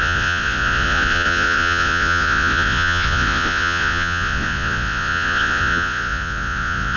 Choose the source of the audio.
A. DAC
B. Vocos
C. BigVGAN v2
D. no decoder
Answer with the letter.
B